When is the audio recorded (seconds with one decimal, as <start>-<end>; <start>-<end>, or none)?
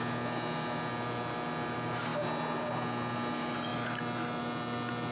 0.0-5.1